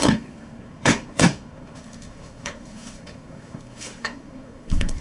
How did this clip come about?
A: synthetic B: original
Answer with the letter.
A